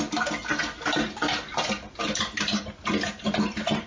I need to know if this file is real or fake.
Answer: real